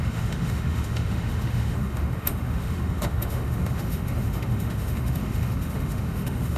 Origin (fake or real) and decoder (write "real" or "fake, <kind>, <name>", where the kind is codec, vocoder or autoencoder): fake, autoencoder, DAC-VAE